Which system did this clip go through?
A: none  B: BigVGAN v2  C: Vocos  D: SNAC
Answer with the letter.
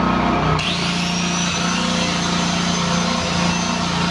A